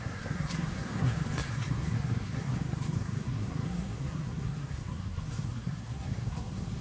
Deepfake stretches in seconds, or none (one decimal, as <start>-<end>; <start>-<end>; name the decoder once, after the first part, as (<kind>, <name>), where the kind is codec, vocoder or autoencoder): 0.0-6.8 (codec, SNAC)